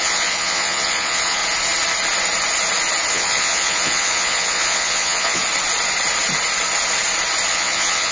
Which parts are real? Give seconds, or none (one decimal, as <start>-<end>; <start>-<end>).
1.4-3.1; 5.4-7.5